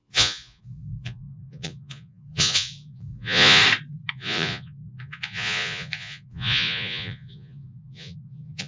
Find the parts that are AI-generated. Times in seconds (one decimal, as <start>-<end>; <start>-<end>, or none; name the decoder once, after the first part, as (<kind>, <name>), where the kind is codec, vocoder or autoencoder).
0.0-3.6 (vocoder, Vocos); 4.1-8.7

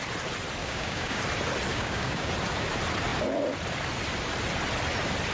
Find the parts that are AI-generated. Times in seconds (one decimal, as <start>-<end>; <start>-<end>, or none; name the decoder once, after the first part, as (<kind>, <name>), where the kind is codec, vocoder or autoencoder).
0.6-1.2 (codec, DAC); 1.7-2.3